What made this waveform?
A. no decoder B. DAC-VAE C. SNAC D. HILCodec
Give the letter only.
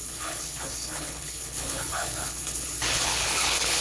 D